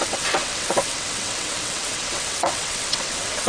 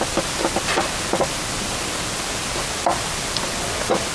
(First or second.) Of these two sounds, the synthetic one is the first